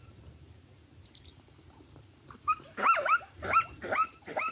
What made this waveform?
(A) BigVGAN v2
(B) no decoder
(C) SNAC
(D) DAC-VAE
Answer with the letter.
A